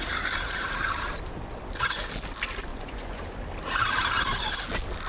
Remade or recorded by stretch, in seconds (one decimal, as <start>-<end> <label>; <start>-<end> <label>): 0.0-2.7 recorded; 2.7-3.2 remade; 3.2-5.1 recorded